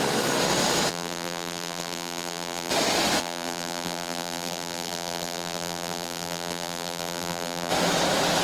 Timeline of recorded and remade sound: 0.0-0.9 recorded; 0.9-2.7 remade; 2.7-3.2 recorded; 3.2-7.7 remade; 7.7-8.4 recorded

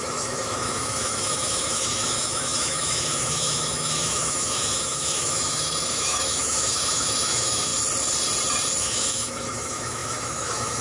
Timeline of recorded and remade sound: 0.0-7.7 remade; 7.7-8.8 recorded; 8.8-10.8 remade

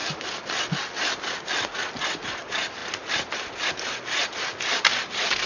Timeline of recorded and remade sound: 0.0-5.5 recorded

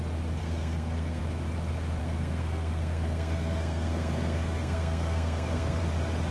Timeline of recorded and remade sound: 0.0-0.4 recorded; 0.4-1.2 remade; 1.2-2.0 recorded; 2.0-5.8 remade; 5.8-6.3 recorded

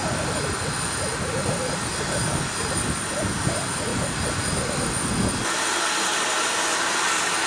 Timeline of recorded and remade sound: 0.0-7.5 recorded

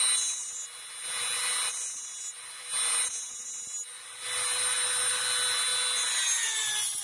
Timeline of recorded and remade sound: 0.0-7.0 recorded

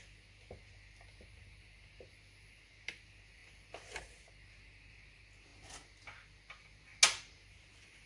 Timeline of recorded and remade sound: 0.0-8.1 recorded

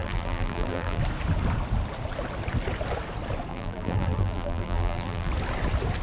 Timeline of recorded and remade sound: 0.0-1.0 remade; 1.0-3.5 recorded; 3.5-5.3 remade; 5.3-6.0 recorded